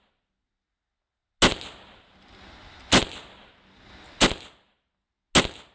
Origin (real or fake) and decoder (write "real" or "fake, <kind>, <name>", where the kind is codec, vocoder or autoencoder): real